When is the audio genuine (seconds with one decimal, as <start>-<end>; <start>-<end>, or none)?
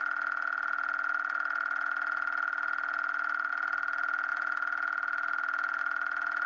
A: 0.0-6.5